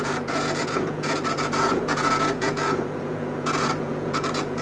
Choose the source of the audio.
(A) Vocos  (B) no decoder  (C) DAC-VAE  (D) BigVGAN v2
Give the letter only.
A